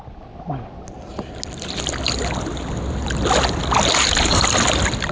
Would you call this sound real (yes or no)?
yes